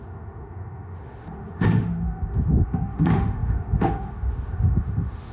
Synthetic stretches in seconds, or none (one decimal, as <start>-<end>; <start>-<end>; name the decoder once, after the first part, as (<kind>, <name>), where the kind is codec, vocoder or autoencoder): 0.0-5.3 (autoencoder, DAC-VAE)